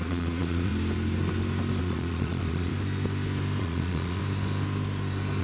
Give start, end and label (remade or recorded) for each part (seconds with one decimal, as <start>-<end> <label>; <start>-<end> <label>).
0.0-0.7 remade; 0.7-1.8 recorded; 1.8-2.7 remade; 2.7-3.6 recorded; 3.6-4.2 remade; 4.2-5.4 recorded